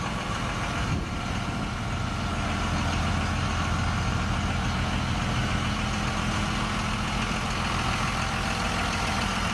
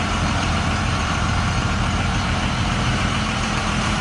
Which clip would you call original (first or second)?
first